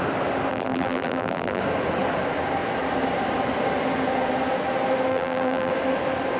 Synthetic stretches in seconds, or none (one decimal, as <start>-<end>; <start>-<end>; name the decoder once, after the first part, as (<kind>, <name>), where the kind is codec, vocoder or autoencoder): 0.5-1.6 (vocoder, BigVGAN v2); 5.1-5.7